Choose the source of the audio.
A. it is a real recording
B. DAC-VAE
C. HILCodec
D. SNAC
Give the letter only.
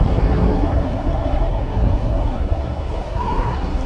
D